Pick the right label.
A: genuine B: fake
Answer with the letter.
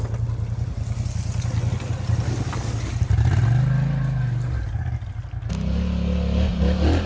A